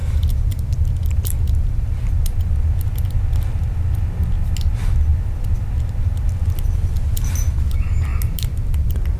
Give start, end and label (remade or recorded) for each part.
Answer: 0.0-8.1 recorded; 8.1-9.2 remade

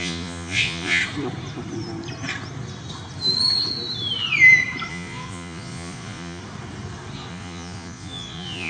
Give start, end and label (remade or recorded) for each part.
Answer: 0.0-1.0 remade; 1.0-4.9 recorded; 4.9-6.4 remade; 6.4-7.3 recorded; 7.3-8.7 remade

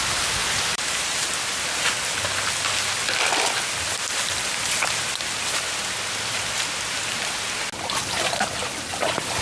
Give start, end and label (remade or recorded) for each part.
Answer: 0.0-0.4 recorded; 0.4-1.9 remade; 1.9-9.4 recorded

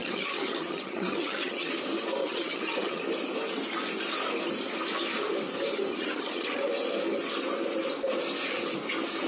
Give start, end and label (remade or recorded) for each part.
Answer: 0.0-1.7 remade; 1.7-2.2 recorded; 2.2-3.0 remade; 3.0-5.9 recorded; 5.9-6.7 remade; 6.7-9.3 recorded